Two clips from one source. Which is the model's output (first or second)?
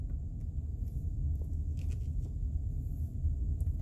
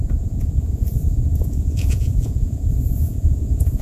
second